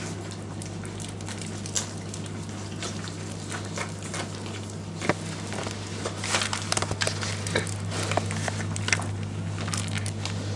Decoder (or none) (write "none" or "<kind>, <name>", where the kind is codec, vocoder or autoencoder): none